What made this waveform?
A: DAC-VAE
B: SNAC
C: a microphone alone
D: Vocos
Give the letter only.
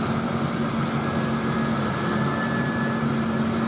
C